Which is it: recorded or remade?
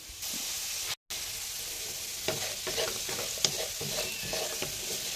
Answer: recorded